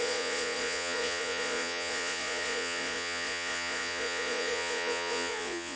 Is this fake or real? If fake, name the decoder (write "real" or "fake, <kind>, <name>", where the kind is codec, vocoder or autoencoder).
fake, vocoder, Vocos